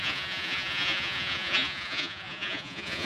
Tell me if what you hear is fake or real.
fake